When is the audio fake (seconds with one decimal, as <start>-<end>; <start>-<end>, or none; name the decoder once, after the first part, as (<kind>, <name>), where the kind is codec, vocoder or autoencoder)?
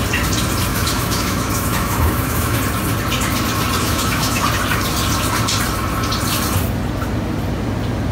0.7-2.6 (autoencoder, DAC-VAE); 3.8-4.4